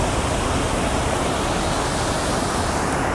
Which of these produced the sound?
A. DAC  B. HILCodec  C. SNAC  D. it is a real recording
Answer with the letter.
D